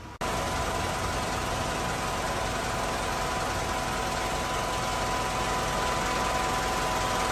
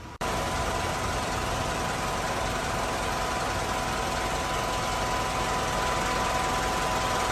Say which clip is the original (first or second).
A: first